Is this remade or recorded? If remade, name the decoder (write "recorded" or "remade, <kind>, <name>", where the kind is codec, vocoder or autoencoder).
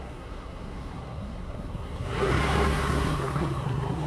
remade, codec, SNAC